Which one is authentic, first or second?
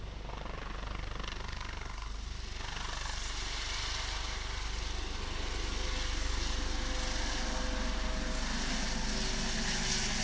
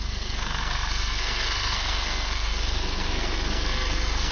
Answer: first